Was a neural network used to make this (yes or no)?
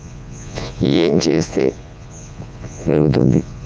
yes